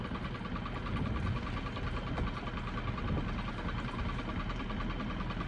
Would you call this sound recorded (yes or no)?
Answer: yes